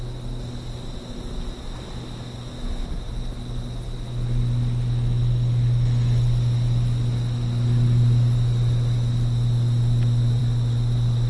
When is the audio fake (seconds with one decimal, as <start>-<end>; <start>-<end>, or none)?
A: none